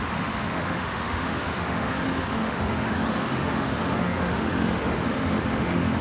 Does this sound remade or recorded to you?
remade